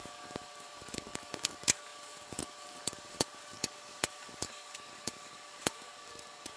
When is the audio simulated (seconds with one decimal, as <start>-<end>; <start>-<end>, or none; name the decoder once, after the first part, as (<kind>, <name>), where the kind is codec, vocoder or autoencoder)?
0.0-6.6 (codec, DAC)